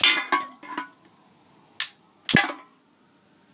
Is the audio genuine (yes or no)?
yes